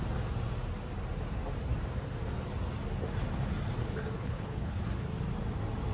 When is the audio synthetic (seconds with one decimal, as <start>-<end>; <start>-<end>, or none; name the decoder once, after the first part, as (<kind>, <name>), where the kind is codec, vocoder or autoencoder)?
3.8-4.8 (codec, HILCodec)